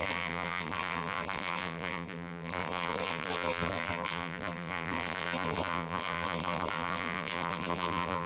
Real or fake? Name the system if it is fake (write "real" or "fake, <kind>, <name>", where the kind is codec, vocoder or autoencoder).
fake, vocoder, BigVGAN v2